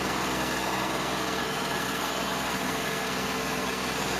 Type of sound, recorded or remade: remade